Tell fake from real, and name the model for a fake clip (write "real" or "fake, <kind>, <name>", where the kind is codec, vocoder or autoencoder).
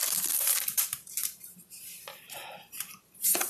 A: fake, vocoder, BigVGAN v2